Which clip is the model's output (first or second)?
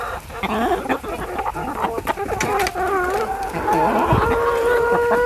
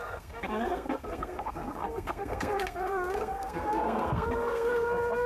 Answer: second